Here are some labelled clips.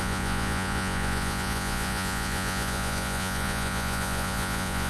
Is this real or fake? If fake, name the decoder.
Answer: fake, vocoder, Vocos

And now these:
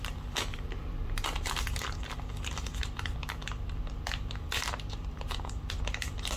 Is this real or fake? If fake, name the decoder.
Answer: fake, vocoder, BigVGAN v2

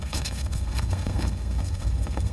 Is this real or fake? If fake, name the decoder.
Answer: fake, codec, SNAC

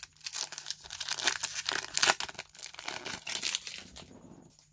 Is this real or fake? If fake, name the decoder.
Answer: real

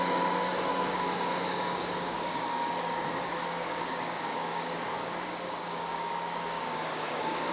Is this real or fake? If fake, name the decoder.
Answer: fake, codec, DAC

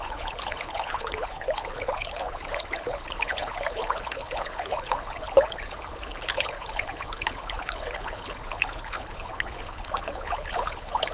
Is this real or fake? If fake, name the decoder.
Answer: fake, codec, HILCodec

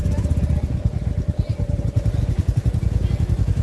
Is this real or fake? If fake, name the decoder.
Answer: real